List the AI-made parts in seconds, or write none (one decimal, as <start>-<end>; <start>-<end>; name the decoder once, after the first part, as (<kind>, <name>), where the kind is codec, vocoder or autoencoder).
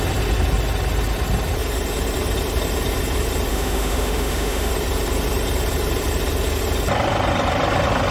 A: 3.5-4.7 (autoencoder, DAC-VAE)